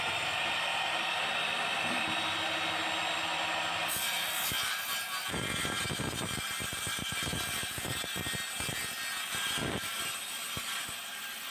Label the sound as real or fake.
real